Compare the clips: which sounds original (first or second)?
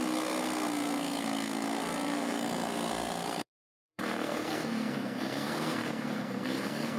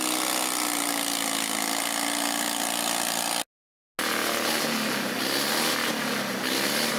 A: second